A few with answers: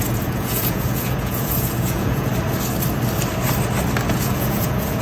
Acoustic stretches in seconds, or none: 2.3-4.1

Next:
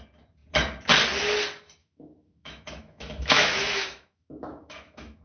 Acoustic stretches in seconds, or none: 0.0-1.8

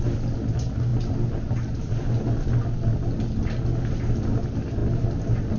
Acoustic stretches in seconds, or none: 0.0-5.6

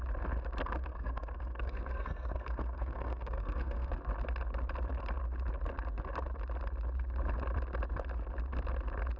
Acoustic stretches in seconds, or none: 0.0-0.6; 3.9-9.2